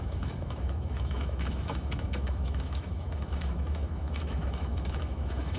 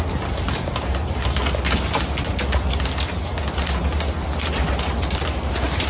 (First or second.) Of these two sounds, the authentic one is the second